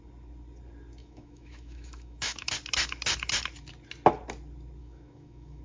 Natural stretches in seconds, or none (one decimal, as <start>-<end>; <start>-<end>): 0.0-1.0; 2.5-4.8